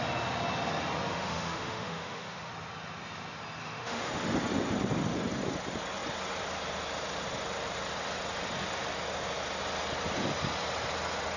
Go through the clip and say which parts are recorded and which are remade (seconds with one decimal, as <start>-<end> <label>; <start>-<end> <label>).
0.0-1.1 recorded; 1.1-2.5 remade; 2.5-3.6 recorded; 3.6-4.1 remade; 4.1-11.4 recorded